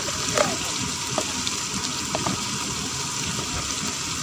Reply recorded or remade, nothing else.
recorded